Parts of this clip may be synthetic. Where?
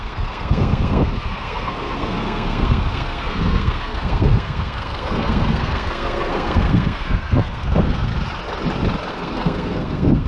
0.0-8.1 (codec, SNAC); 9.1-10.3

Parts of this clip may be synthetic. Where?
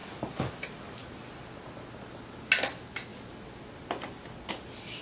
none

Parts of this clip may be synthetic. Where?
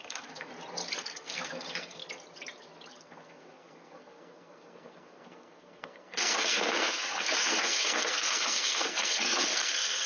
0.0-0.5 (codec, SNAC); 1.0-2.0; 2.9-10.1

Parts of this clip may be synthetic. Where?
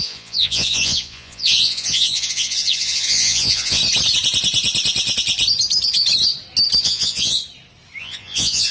0.0-3.8 (vocoder, Vocos); 6.8-7.4; 8.0-8.7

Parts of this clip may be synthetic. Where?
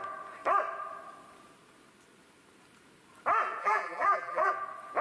3.6-4.5 (vocoder, BigVGAN v2)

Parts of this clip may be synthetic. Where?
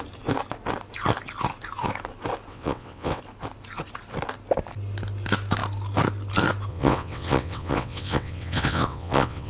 2.5-3.2 (vocoder, WaveNeXt); 6.7-9.5